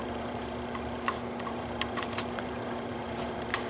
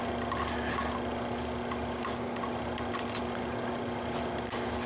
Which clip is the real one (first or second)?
second